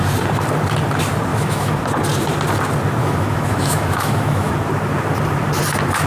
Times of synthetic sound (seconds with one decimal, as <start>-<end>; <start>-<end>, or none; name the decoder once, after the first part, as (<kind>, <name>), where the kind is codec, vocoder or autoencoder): 1.3-1.8 (autoencoder, DAC-VAE); 3.0-4.5